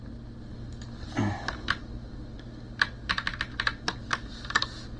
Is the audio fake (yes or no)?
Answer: no